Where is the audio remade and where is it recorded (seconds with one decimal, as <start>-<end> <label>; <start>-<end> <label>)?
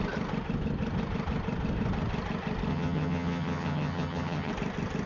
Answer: 0.0-2.7 recorded; 2.7-4.5 remade; 4.5-5.1 recorded